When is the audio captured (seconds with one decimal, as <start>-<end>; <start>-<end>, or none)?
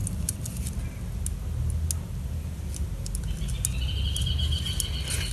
0.0-5.3